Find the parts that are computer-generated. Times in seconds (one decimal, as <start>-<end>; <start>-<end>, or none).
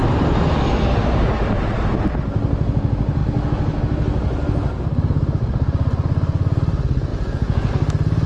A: 7.1-7.7